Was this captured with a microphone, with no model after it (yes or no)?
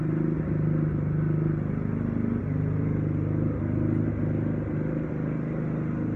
yes